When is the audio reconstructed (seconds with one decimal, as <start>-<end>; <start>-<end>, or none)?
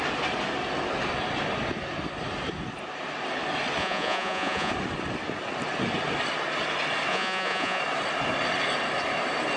3.8-4.7; 7.1-7.8